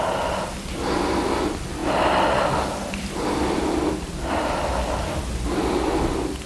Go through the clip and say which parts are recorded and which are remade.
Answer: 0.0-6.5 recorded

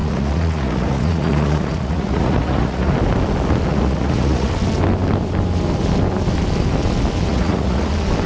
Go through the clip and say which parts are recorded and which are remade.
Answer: 0.0-2.9 remade; 2.9-3.7 recorded; 3.7-4.5 remade; 4.5-7.3 recorded; 7.3-7.9 remade; 7.9-8.3 recorded

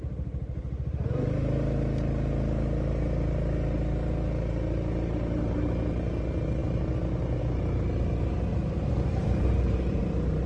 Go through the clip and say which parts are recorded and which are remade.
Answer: 0.0-8.5 recorded; 8.5-10.0 remade; 10.0-10.5 recorded

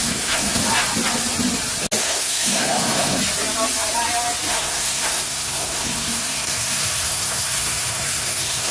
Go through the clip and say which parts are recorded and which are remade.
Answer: 0.0-0.6 remade; 0.6-2.0 recorded; 2.0-3.2 remade; 3.2-4.5 recorded; 4.5-8.7 remade